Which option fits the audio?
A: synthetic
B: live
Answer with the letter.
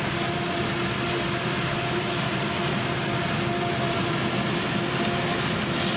B